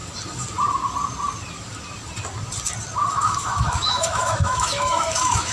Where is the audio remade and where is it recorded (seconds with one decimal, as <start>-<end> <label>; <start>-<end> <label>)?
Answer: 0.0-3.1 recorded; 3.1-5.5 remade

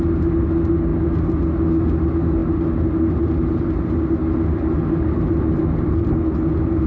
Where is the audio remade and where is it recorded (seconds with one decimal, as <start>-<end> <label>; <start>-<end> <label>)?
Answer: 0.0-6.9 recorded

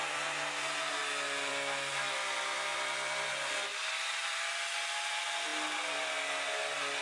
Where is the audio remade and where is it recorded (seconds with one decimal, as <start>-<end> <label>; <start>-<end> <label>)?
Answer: 0.0-2.7 recorded; 2.7-3.3 remade; 3.3-3.7 recorded; 3.7-4.5 remade; 4.5-7.0 recorded